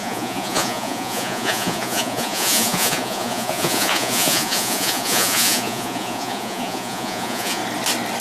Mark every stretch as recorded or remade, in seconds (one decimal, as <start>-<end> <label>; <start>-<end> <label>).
0.0-7.6 remade; 7.6-8.2 recorded